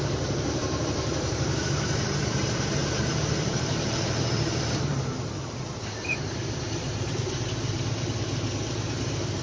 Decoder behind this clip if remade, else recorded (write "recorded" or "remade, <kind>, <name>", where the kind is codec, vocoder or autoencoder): remade, vocoder, BigVGAN v2